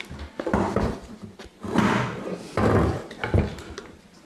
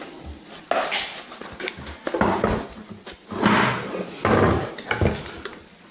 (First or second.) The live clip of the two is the second